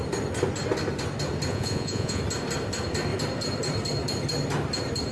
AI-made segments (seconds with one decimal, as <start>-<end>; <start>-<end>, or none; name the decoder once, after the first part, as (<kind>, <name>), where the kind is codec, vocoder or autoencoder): 1.5-2.2 (vocoder, Vocos)